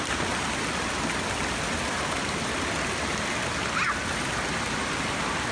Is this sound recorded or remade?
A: remade